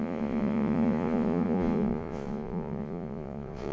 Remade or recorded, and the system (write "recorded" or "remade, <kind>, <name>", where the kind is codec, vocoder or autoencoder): remade, vocoder, Vocos